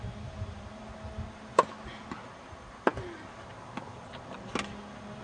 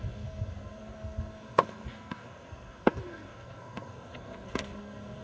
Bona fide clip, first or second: first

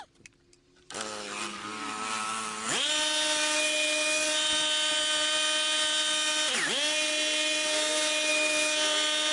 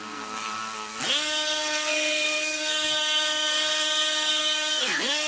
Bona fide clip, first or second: first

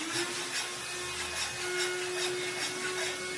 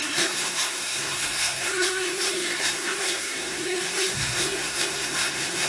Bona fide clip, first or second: first